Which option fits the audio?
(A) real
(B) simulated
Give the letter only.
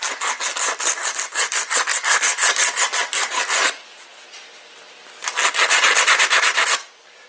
A